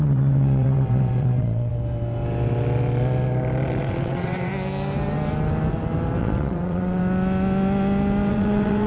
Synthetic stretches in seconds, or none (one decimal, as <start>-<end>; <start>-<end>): 0.0-1.7; 3.8-4.5; 6.2-7.0; 8.3-8.9